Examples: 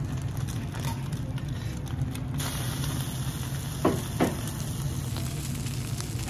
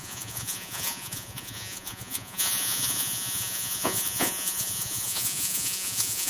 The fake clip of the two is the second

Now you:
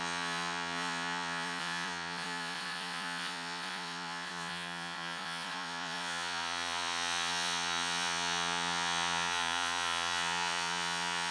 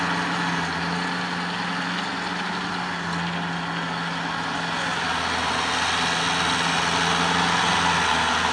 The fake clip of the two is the first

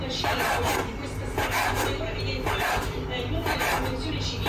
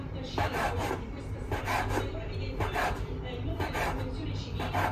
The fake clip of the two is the second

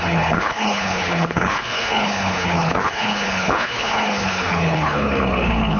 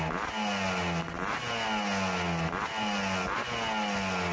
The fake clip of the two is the first